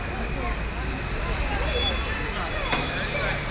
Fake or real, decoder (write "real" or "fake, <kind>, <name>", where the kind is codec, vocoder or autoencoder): real